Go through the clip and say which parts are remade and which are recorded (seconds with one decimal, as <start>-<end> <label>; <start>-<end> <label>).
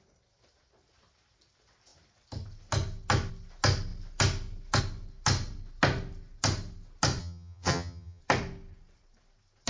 0.0-7.2 recorded; 7.2-8.2 remade; 8.2-9.7 recorded